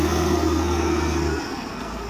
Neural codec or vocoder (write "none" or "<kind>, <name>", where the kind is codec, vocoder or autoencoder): codec, SNAC